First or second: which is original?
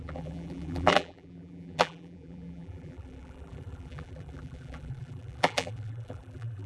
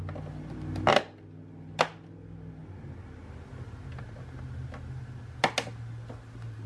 second